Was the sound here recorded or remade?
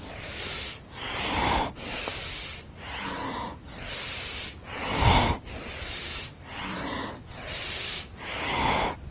recorded